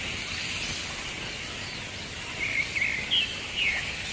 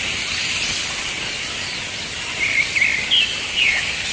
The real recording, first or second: first